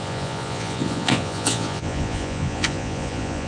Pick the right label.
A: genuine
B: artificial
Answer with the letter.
B